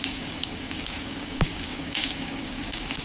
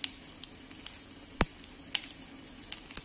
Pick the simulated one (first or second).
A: first